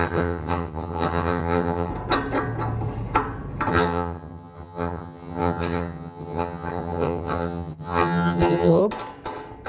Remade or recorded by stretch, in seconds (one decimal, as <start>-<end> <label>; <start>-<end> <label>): 0.0-1.9 remade; 1.9-3.7 recorded; 3.7-8.8 remade; 8.8-9.7 recorded

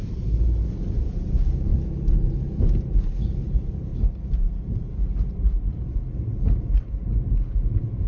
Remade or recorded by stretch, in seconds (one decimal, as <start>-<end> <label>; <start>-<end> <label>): 0.0-1.7 remade; 1.7-2.3 recorded; 2.3-3.9 remade; 3.9-4.9 recorded; 4.9-6.3 remade; 6.3-7.0 recorded; 7.0-8.1 remade

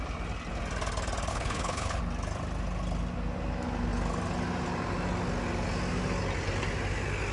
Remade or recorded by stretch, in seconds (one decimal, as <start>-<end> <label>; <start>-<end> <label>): 0.0-1.3 recorded; 1.3-2.0 remade; 2.0-7.3 recorded

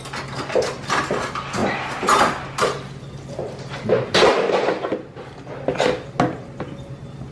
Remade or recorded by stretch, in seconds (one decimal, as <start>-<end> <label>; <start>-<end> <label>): 0.0-7.3 recorded

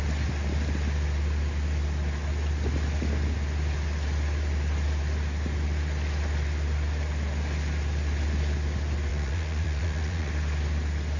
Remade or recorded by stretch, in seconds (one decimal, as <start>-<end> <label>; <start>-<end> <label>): 0.0-9.1 recorded; 9.1-10.3 remade; 10.3-11.2 recorded

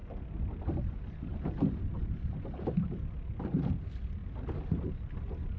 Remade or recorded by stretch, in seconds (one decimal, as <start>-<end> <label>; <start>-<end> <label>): 0.0-1.3 recorded; 1.3-3.7 remade; 3.7-5.6 recorded

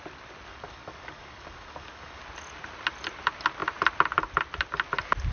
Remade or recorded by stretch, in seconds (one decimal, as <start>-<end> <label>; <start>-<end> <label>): 0.0-0.5 recorded; 0.5-2.2 remade; 2.2-5.3 recorded